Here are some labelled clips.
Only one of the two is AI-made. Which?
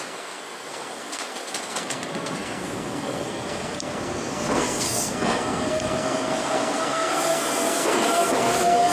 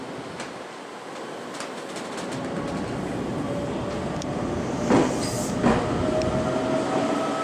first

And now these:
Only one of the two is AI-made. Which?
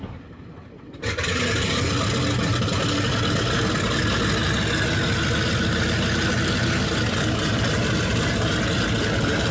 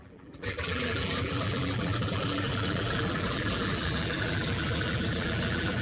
second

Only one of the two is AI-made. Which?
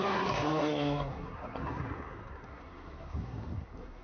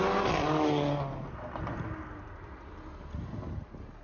first